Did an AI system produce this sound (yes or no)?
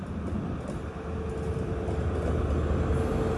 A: no